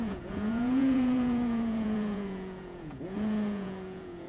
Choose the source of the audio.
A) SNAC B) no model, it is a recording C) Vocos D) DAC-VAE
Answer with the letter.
C